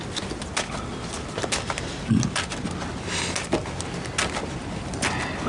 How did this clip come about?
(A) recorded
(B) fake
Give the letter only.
A